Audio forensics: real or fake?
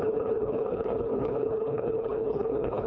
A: fake